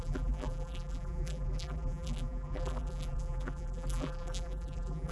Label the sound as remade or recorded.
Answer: remade